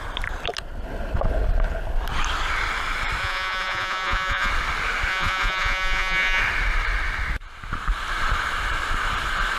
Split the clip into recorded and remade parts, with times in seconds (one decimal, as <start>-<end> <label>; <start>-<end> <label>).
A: 0.0-3.2 recorded; 3.2-4.5 remade; 4.5-5.1 recorded; 5.1-6.4 remade; 6.4-9.6 recorded